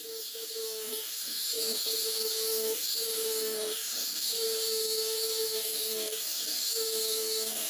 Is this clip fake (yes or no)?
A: yes